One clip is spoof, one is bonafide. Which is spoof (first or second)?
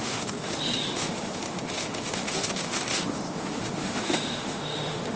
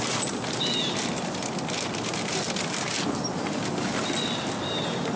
first